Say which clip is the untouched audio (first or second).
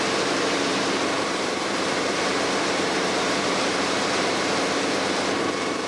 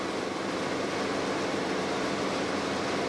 second